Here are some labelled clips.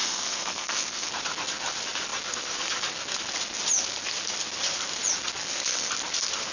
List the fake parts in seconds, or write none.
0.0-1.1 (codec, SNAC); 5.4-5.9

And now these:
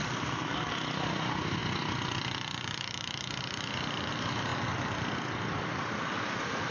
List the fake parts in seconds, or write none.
none

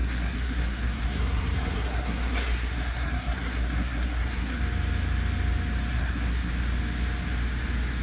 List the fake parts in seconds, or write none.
0.0-4.6 (codec, SNAC); 5.9-6.5

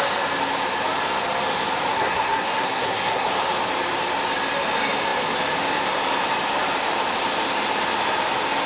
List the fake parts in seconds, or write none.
1.9-3.3 (codec, SNAC)

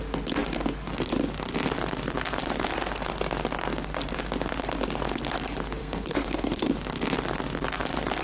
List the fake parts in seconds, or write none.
5.8-6.7 (codec, SNAC)

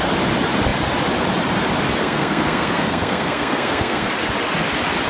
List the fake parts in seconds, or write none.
2.0-4.1 (codec, SNAC)